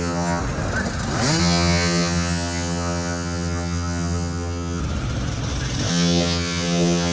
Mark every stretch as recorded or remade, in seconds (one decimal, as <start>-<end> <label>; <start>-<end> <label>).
0.0-0.4 remade; 0.4-1.4 recorded; 1.4-4.8 remade; 4.8-5.9 recorded; 5.9-7.1 remade